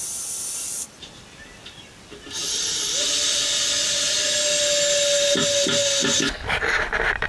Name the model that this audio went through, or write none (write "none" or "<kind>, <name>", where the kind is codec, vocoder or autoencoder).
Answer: none